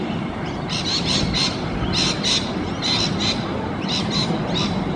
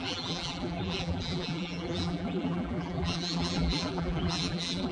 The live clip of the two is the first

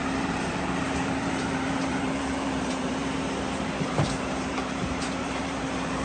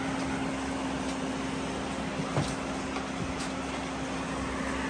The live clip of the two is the second